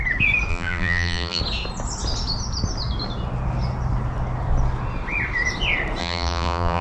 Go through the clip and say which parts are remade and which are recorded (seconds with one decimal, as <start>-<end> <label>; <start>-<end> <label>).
0.0-0.5 recorded; 0.5-1.4 remade; 1.4-6.0 recorded; 6.0-6.8 remade